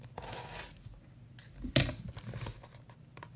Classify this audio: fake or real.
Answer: real